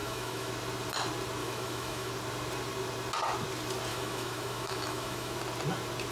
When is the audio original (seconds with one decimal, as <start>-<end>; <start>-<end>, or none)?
0.5-1.4; 2.1-3.9; 5.4-6.1